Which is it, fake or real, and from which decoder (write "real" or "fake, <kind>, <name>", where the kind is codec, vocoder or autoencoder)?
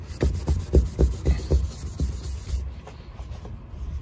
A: real